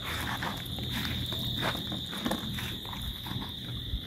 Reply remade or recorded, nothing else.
recorded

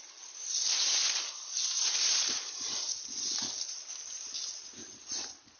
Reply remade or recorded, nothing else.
recorded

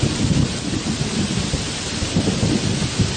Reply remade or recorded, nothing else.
recorded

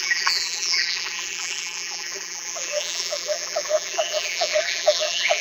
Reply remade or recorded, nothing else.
remade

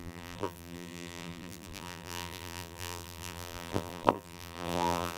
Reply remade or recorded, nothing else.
remade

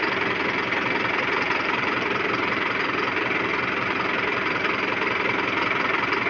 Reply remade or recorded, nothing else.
remade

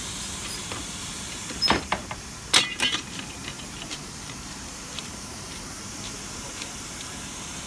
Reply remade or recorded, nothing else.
remade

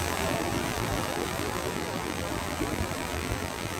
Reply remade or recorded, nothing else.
remade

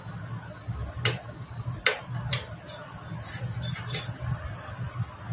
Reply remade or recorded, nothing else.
recorded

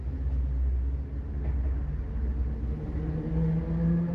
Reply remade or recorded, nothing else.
recorded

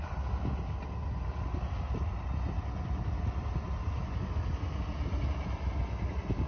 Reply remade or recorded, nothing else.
recorded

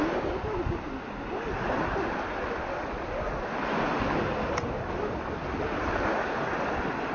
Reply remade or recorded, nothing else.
recorded